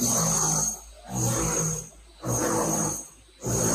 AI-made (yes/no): no